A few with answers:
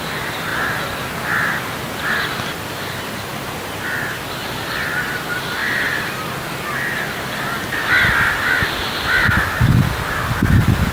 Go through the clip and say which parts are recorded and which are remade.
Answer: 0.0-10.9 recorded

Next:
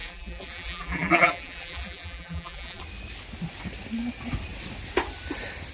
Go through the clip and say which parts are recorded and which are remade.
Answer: 0.0-2.8 remade; 2.8-5.7 recorded

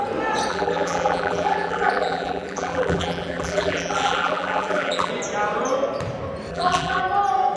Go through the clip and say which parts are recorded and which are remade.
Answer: 0.0-0.5 recorded; 0.5-5.1 remade; 5.1-6.5 recorded; 6.5-7.0 remade; 7.0-7.6 recorded

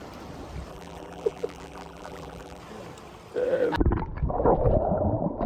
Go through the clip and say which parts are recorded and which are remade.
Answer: 0.0-0.7 recorded; 0.7-2.6 remade; 2.6-5.5 recorded

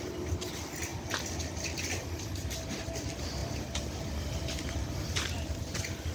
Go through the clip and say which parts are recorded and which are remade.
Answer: 0.0-3.4 recorded; 3.4-6.1 remade

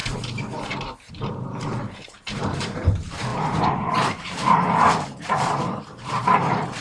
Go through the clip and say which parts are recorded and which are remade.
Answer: 0.0-1.1 recorded; 1.1-6.8 remade

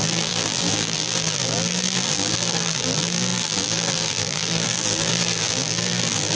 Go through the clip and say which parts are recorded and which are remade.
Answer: 0.0-6.3 remade